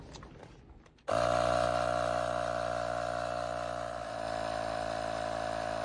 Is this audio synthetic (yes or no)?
no